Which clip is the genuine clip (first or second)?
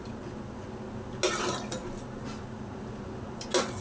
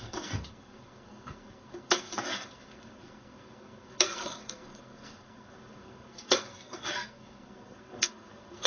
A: first